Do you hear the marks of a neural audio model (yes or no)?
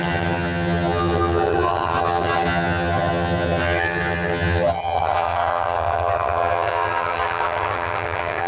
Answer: yes